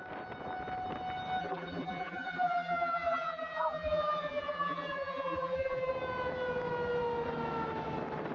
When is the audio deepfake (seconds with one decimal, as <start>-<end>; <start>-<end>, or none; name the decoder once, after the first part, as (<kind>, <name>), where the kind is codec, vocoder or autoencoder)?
1.4-5.9 (vocoder, BigVGAN v2)